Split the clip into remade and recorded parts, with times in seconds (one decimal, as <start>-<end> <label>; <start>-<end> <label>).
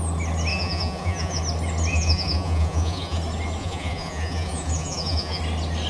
0.0-0.5 recorded; 0.5-1.4 remade; 1.4-1.9 recorded; 1.9-3.2 remade; 3.2-3.6 recorded; 3.6-5.4 remade; 5.4-5.9 recorded